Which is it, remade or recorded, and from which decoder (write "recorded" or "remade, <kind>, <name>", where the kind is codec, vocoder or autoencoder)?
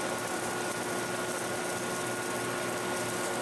recorded